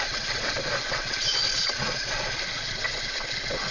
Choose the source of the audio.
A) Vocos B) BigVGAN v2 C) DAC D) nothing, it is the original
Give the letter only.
A